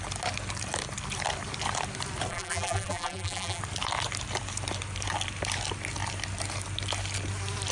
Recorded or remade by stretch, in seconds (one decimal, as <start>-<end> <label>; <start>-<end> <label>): 0.0-2.3 recorded; 2.3-3.6 remade; 3.6-7.7 recorded